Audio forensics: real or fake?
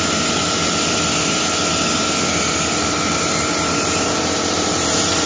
fake